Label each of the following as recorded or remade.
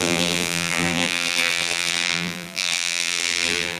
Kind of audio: remade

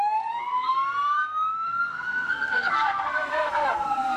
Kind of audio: remade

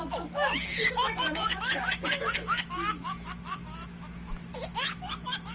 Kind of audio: remade